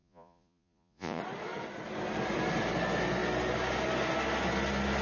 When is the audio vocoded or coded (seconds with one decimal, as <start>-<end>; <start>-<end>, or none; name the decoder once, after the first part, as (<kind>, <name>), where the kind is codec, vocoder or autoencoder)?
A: 0.0-1.2 (vocoder, Vocos)